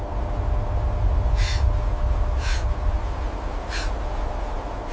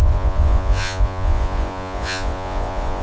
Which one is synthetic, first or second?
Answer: second